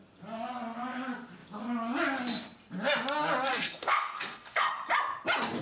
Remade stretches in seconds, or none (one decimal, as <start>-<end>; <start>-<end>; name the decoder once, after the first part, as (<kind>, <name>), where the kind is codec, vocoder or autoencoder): 3.5-4.7 (codec, SNAC)